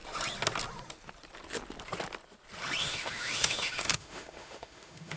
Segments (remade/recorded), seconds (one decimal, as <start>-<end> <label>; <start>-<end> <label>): 0.0-2.8 recorded; 2.8-5.2 remade